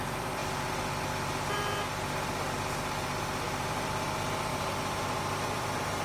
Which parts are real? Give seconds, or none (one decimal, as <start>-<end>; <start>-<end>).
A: 0.4-3.7; 4.5-5.2